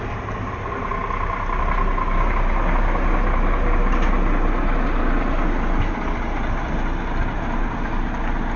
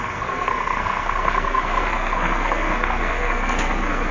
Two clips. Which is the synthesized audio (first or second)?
second